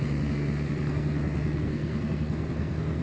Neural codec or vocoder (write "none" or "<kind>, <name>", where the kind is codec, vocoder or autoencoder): codec, SNAC